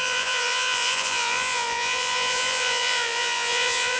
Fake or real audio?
fake